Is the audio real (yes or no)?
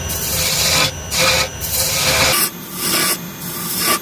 yes